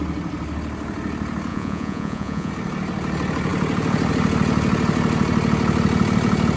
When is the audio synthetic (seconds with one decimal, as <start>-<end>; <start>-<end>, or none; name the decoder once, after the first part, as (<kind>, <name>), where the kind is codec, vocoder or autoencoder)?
1.5-2.5 (vocoder, Vocos)